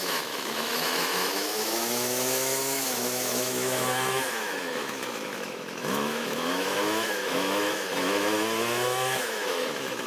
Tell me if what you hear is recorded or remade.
remade